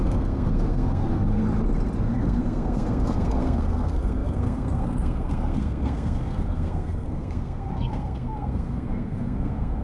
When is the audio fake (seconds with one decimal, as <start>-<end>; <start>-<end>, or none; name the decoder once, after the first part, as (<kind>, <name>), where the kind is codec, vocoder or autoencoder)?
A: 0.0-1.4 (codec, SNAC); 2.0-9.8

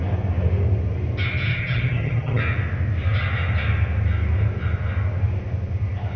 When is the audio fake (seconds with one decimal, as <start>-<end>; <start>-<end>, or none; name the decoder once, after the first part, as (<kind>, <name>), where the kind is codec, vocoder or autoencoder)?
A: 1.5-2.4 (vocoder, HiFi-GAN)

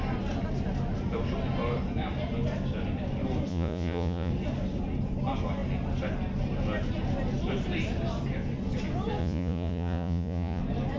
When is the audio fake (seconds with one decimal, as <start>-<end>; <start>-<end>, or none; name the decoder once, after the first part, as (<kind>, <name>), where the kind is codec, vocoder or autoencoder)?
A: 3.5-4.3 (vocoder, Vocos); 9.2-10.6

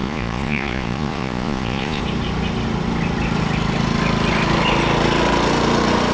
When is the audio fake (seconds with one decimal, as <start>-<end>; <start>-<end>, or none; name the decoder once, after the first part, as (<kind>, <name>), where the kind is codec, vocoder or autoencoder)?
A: 0.0-2.0 (vocoder, Vocos)

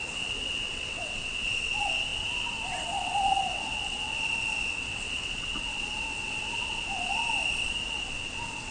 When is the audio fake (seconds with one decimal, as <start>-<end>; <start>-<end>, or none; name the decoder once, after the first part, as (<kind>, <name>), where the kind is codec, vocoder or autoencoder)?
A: 0.0-7.2 (vocoder, WaveNeXt); 8.1-8.7